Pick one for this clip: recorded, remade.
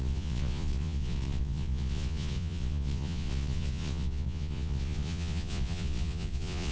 remade